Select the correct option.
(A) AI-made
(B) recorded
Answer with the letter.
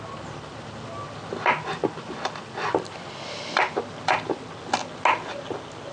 B